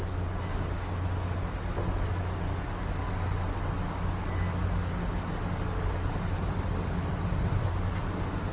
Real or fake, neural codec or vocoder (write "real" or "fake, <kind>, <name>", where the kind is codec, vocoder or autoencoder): real